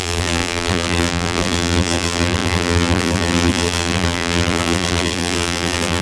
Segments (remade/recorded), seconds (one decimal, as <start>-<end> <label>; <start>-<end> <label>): 0.0-6.0 remade